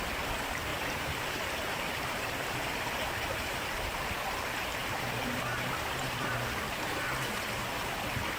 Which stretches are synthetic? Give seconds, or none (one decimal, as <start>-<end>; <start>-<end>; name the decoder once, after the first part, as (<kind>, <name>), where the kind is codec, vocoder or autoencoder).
0.7-3.8 (vocoder, BigVGAN v2); 4.8-7.1